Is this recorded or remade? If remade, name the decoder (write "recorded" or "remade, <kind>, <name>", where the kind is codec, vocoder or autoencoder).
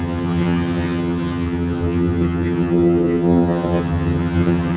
remade, vocoder, HiFi-GAN